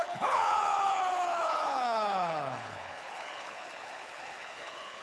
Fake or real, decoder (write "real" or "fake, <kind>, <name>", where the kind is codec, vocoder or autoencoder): fake, codec, HILCodec